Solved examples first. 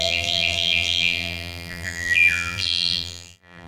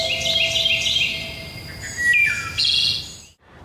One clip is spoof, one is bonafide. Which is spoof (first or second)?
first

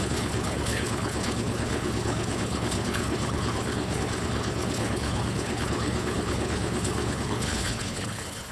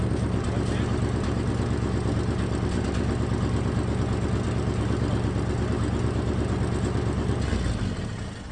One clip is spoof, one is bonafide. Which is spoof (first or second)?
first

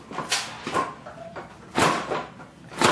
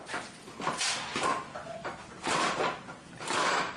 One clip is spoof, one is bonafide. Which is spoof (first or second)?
second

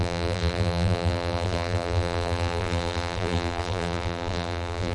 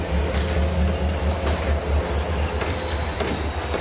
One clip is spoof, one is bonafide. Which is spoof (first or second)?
first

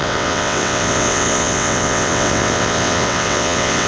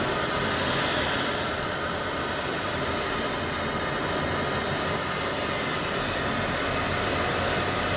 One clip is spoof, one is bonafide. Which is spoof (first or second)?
first